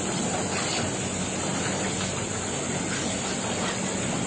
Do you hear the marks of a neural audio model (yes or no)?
no